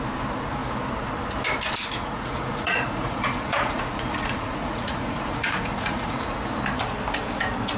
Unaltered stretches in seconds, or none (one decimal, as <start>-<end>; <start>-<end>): 0.0-1.8; 6.4-7.8